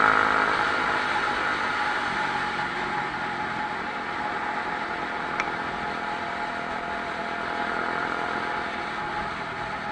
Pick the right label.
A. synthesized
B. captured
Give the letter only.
B